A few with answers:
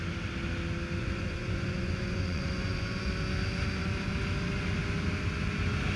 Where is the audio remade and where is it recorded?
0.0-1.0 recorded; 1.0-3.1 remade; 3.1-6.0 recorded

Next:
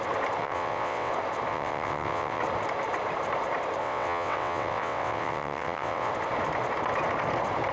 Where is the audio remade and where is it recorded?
0.0-0.4 recorded; 0.4-1.1 remade; 1.1-1.5 recorded; 1.5-2.4 remade; 2.4-3.8 recorded; 3.8-6.1 remade; 6.1-7.7 recorded